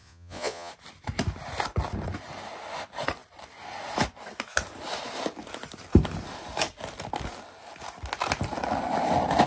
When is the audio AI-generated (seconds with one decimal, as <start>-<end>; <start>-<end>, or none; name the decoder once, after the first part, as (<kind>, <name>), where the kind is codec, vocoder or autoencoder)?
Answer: 0.0-0.7 (vocoder, Vocos)